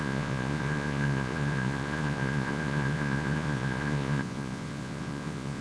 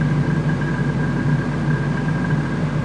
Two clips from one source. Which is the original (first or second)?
second